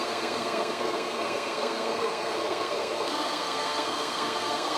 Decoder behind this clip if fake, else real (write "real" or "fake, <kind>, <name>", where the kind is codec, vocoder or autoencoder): fake, codec, SNAC